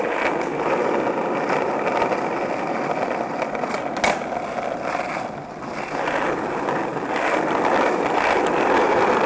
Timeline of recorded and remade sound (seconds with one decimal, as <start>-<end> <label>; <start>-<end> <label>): 0.0-9.3 recorded